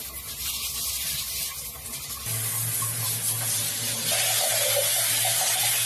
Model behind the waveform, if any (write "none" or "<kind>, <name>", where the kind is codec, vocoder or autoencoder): none